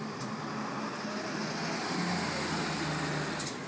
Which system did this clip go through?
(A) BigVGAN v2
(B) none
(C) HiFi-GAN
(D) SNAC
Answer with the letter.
B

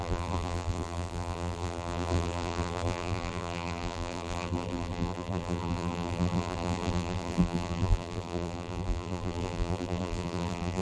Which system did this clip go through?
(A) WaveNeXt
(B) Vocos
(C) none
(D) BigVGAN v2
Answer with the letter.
D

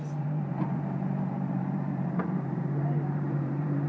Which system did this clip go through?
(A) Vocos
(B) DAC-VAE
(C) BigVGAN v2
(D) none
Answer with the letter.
C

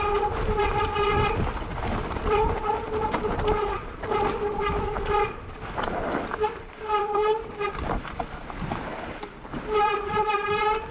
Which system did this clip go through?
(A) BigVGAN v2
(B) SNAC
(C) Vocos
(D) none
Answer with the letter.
A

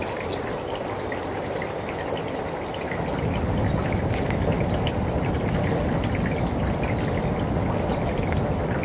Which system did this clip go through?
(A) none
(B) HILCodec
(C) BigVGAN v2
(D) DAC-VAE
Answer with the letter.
A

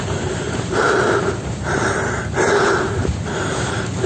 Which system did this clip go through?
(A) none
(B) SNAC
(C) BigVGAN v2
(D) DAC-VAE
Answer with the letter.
A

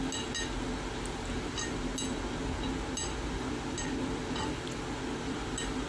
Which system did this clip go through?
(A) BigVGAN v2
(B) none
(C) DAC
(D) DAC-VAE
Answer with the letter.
B